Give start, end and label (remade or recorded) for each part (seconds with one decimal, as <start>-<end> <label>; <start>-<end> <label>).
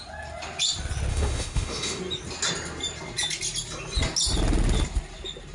0.0-1.1 recorded; 1.1-2.0 remade; 2.0-5.5 recorded